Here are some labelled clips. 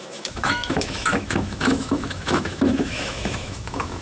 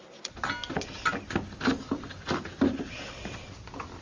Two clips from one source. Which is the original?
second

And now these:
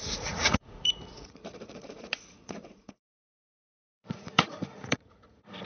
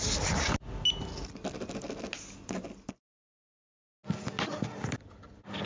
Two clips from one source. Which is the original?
second